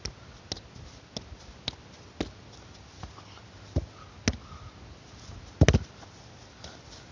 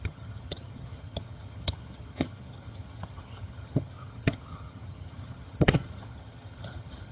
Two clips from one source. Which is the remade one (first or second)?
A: second